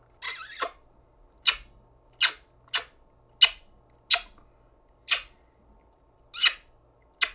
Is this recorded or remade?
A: recorded